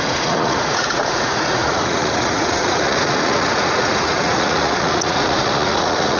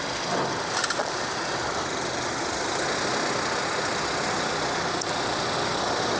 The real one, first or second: second